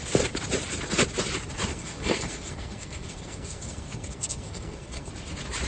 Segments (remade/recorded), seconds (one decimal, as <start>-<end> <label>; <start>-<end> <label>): 0.0-1.7 recorded; 1.7-5.1 remade; 5.1-5.7 recorded